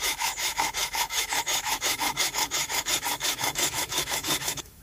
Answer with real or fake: fake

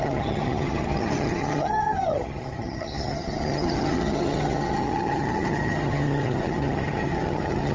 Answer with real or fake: fake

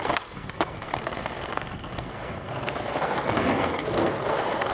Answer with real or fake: fake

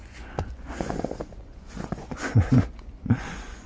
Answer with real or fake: fake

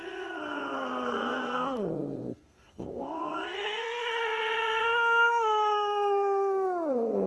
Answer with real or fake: fake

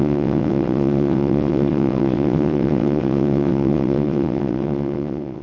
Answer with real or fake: fake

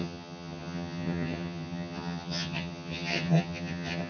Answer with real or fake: fake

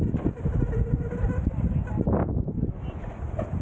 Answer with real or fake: real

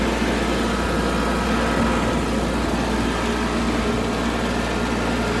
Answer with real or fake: real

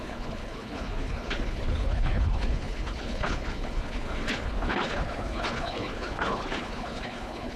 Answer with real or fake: fake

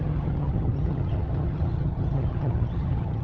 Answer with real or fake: fake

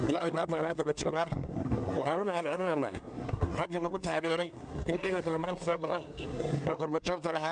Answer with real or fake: fake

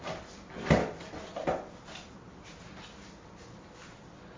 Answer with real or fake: real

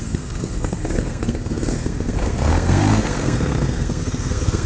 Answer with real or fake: fake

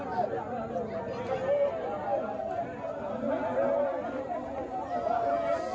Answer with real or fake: real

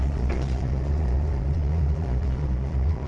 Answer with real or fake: fake